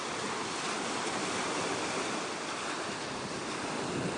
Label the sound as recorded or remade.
recorded